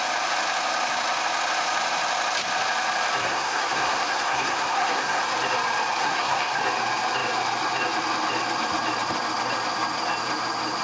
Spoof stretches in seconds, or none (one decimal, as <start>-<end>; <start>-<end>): 3.2-5.2; 6.0-6.6